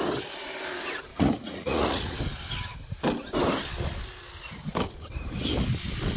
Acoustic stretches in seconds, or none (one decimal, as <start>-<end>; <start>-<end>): 0.0-1.1; 2.2-6.2